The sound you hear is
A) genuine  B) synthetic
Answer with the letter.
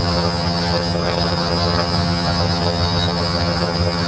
B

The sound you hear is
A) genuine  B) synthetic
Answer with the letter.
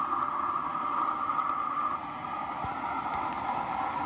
A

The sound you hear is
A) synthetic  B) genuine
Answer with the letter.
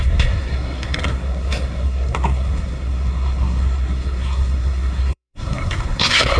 A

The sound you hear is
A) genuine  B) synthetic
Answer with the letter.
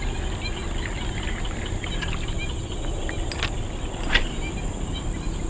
A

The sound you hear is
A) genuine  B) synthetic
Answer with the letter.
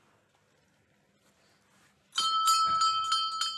A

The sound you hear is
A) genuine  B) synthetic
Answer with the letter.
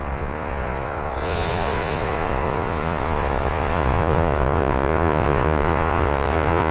B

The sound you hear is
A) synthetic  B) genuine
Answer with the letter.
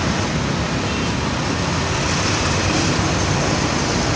B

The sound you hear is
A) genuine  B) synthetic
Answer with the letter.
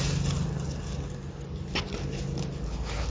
A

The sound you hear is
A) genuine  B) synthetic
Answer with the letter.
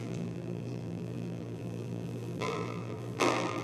B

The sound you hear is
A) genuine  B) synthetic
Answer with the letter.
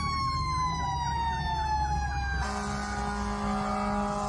A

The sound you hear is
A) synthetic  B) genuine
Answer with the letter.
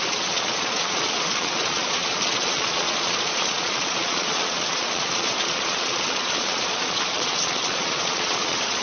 A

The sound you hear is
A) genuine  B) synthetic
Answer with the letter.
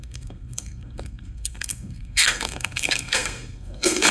B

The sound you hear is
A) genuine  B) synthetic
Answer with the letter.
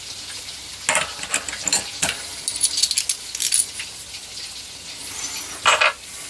A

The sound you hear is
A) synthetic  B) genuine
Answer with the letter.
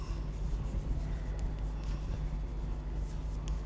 B